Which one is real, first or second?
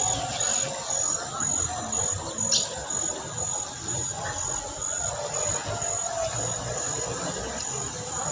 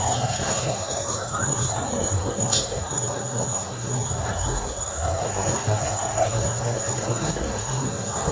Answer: first